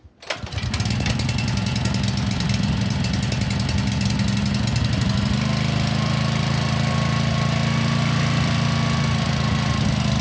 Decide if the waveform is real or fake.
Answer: real